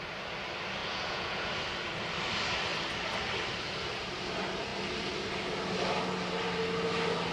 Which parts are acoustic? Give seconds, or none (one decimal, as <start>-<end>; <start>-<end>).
0.0-0.8; 1.5-7.3